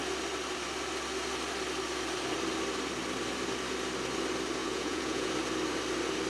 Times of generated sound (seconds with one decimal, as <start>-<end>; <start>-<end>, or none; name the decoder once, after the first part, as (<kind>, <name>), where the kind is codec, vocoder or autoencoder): 4.6-5.3 (vocoder, Vocos)